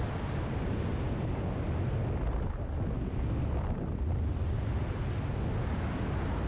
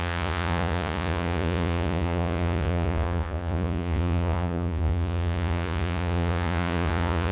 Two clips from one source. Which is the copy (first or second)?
second